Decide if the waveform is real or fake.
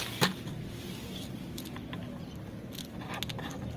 real